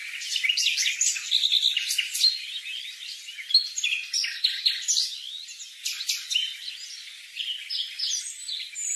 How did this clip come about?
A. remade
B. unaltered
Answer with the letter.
B